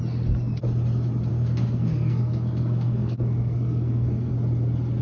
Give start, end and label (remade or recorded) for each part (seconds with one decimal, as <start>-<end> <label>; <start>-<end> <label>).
0.0-1.3 recorded; 1.3-4.3 remade; 4.3-5.0 recorded